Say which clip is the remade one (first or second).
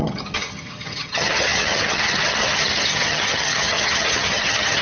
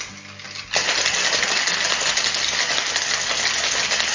first